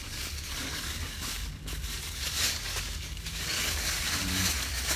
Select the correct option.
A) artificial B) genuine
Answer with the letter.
A